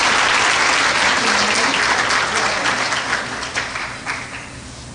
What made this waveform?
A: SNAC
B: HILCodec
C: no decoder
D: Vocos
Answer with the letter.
C